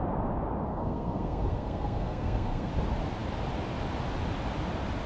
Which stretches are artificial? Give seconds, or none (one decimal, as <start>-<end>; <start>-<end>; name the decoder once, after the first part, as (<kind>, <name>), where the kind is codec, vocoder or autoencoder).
0.7-2.7 (codec, SNAC)